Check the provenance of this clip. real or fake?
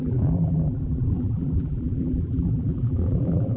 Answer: fake